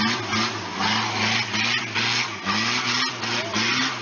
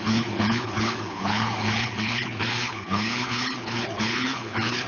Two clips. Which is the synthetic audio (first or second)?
second